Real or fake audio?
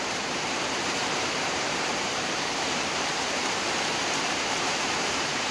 fake